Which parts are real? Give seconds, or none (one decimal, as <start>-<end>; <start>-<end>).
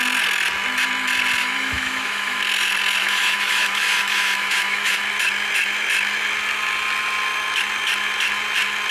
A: 0.0-1.4; 2.4-3.0; 5.0-8.9